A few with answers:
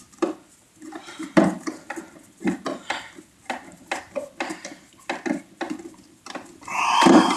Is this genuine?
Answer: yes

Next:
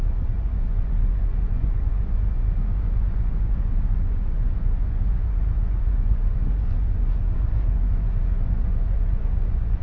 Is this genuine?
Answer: no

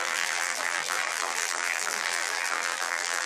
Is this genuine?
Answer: no